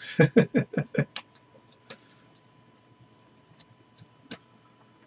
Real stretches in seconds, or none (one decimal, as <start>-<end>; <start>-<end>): 0.0-0.6; 1.8-5.1